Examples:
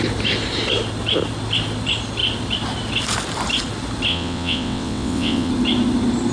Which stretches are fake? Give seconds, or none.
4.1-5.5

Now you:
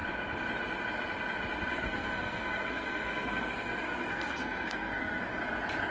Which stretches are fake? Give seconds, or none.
1.7-5.2